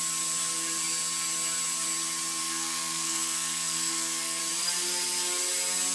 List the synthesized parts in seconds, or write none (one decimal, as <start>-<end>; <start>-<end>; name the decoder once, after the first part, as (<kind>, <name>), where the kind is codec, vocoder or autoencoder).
2.4-4.4 (codec, SNAC)